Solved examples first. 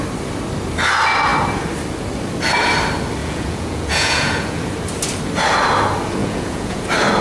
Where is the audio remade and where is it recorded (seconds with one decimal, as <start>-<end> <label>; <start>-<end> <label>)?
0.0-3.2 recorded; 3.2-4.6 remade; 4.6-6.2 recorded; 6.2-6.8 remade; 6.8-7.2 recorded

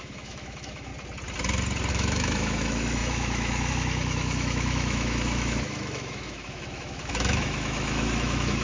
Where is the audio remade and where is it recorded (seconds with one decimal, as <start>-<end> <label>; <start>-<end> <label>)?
0.0-0.9 remade; 0.9-1.9 recorded; 1.9-8.6 remade

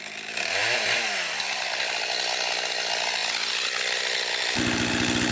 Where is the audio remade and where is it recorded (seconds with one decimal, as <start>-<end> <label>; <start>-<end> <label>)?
0.0-5.3 recorded

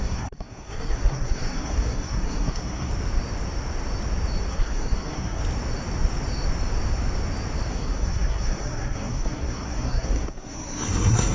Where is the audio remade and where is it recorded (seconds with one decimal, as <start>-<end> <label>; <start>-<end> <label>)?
0.0-2.9 remade; 2.9-4.5 recorded; 4.5-5.4 remade; 5.4-7.7 recorded; 7.7-11.3 remade

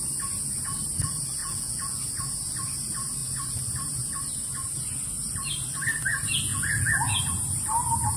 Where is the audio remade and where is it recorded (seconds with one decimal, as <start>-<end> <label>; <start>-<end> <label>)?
0.0-1.4 recorded; 1.4-2.0 remade; 2.0-6.5 recorded; 6.5-7.2 remade; 7.2-8.2 recorded

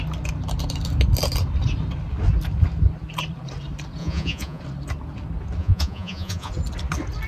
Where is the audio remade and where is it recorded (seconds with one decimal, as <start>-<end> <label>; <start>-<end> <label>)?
0.0-4.0 recorded; 4.0-4.6 remade; 4.6-5.6 recorded; 5.6-6.5 remade; 6.5-7.3 recorded